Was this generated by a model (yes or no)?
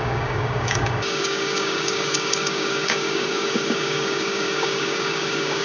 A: yes